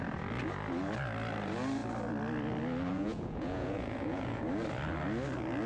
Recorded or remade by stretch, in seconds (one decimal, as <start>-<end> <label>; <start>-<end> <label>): 0.0-2.9 recorded; 2.9-4.4 remade; 4.4-5.7 recorded